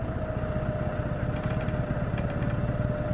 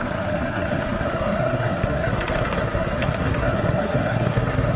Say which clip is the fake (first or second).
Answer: second